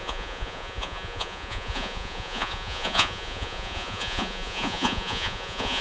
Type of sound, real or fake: fake